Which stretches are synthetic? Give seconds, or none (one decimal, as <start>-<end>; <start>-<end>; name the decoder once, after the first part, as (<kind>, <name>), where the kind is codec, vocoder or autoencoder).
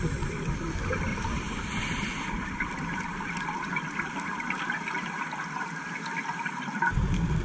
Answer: 1.1-4.5 (vocoder, BigVGAN v2)